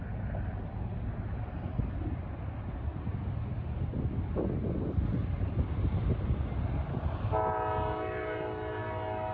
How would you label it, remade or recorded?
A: recorded